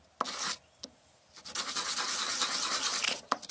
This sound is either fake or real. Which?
real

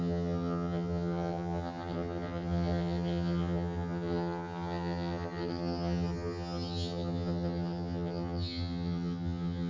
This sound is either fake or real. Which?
fake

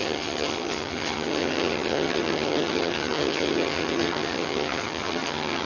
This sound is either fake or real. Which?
fake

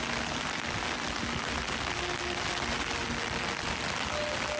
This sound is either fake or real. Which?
real